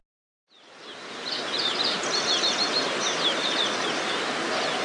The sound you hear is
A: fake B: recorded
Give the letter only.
B